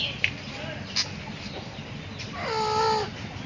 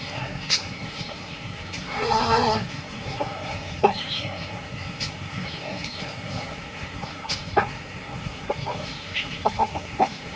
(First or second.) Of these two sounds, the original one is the first